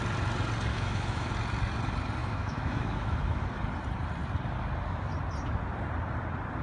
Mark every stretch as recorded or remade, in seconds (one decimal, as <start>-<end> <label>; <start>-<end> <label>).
0.0-0.7 recorded; 0.7-1.3 remade; 1.3-2.2 recorded; 2.2-3.4 remade; 3.4-6.6 recorded